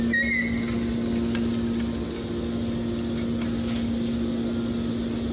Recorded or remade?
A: recorded